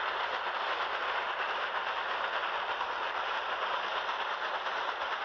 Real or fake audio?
real